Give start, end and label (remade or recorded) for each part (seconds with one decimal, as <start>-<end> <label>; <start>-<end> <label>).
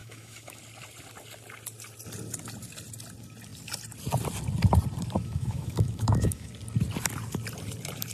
0.0-0.6 remade; 0.6-5.2 recorded; 5.2-6.5 remade; 6.5-8.1 recorded